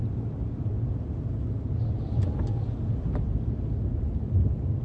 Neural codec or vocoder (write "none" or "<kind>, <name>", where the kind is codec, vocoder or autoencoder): none